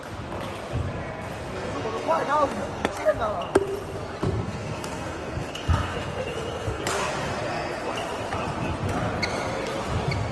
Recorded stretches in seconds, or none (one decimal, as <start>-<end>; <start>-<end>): 0.0-1.4; 3.2-4.2; 6.8-10.3